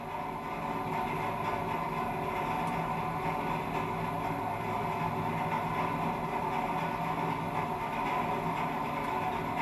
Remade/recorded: recorded